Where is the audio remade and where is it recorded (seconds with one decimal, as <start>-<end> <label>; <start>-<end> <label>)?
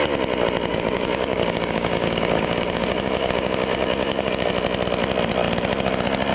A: 0.0-0.7 recorded; 0.7-4.5 remade; 4.5-6.3 recorded